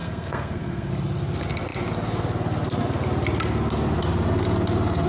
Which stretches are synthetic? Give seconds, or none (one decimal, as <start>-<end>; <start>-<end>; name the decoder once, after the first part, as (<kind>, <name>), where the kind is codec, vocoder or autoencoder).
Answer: 0.0-0.9 (codec, SNAC)